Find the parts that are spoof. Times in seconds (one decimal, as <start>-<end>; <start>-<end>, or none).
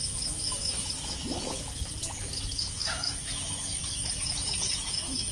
0.0-5.3